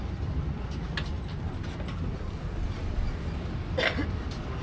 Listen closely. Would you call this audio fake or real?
real